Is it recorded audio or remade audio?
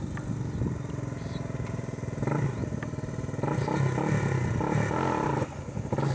recorded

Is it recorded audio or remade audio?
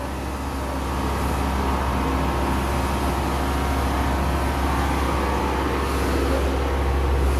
recorded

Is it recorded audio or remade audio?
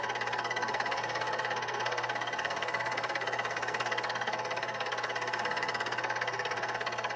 remade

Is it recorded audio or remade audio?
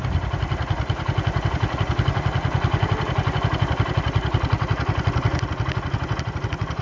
recorded